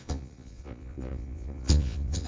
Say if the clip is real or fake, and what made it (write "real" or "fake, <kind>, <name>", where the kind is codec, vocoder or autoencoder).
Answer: fake, vocoder, Vocos